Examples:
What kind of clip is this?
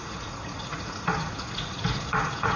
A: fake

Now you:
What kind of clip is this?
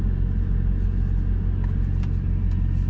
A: real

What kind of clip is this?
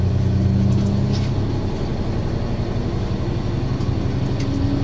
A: real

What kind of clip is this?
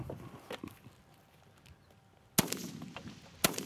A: real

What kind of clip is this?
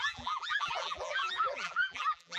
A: fake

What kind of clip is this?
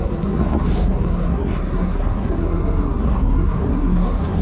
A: fake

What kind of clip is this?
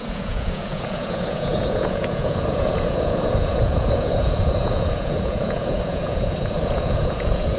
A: fake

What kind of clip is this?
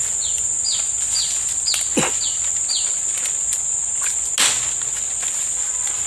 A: real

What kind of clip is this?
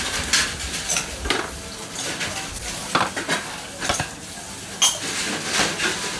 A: real